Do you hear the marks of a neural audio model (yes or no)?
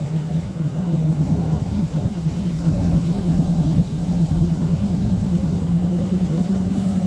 yes